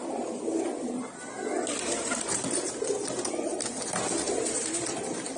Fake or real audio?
real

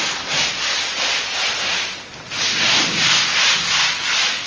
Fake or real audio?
real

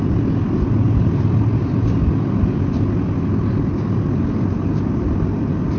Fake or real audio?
real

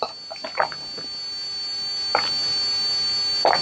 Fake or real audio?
real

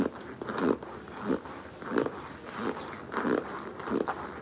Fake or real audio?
real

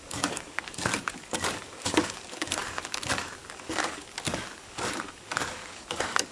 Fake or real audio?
fake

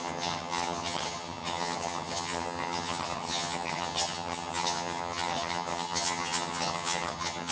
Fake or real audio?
fake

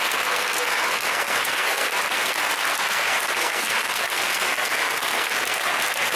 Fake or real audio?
fake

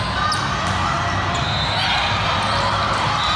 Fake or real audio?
real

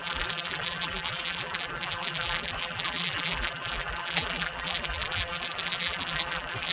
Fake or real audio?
fake